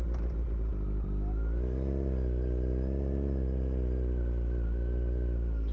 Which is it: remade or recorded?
recorded